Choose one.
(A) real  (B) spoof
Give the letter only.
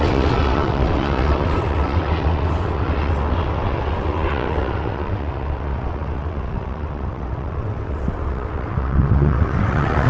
B